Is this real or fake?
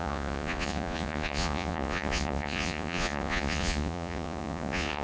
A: fake